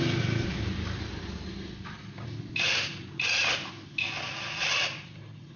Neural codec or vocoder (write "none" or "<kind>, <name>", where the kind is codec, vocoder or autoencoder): none